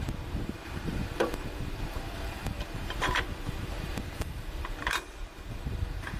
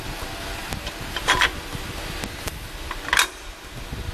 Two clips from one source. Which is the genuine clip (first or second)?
second